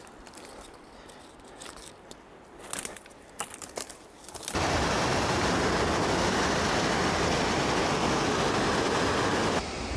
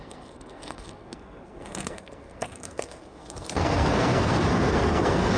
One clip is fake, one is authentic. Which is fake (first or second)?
second